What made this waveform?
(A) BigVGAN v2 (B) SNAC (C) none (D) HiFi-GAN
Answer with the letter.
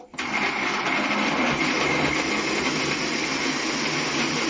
C